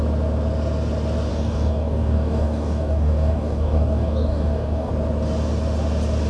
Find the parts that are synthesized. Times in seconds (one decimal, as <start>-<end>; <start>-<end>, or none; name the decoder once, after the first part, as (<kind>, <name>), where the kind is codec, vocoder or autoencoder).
1.3-4.9 (codec, DAC)